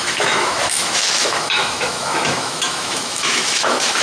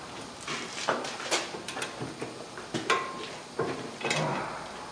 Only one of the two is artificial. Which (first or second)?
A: first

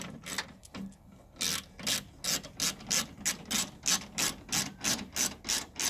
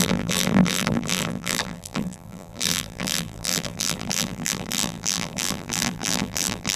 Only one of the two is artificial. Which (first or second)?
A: second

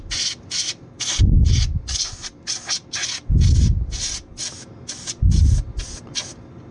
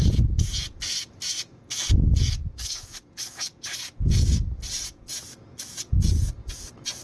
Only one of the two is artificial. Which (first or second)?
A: second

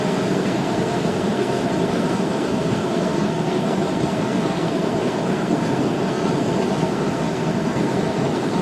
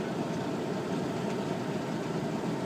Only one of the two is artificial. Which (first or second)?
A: first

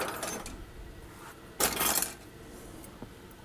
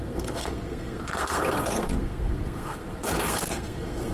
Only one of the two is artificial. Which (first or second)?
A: second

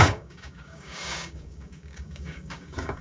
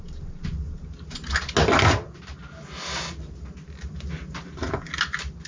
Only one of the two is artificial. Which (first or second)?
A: first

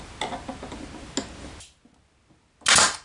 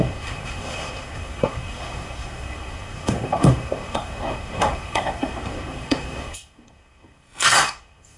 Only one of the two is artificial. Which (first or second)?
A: second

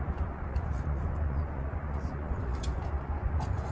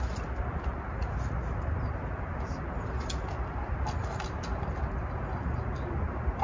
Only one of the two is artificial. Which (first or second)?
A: first